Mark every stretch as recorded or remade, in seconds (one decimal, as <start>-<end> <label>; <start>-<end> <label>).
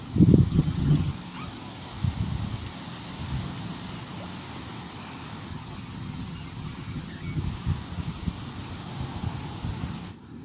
0.0-0.5 recorded; 0.5-1.1 remade; 1.1-5.5 recorded; 5.5-7.4 remade; 7.4-10.4 recorded